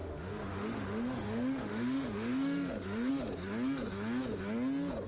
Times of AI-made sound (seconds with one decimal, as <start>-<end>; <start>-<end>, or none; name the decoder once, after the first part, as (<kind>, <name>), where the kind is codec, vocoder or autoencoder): 0.0-3.1 (autoencoder, DAC-VAE)